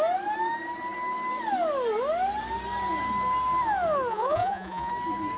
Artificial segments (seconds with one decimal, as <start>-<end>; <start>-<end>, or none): 4.1-4.9